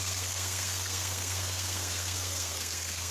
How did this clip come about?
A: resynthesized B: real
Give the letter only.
A